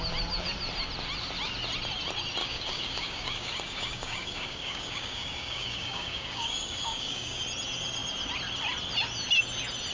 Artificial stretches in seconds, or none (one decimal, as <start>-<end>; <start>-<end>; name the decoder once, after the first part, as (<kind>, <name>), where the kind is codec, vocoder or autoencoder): 2.4-7.4 (codec, DAC)